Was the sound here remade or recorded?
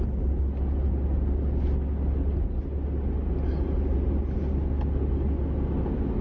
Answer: recorded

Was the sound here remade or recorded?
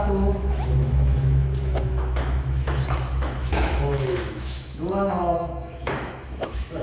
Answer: remade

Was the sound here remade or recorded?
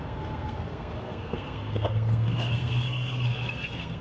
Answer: remade